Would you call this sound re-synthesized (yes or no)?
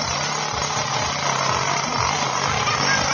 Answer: no